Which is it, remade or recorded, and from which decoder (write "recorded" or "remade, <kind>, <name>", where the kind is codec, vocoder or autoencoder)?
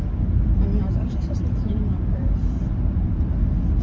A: remade, vocoder, BigVGAN v2